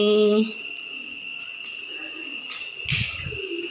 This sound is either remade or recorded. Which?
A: recorded